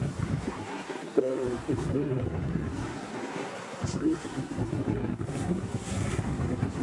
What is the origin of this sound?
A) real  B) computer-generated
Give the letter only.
B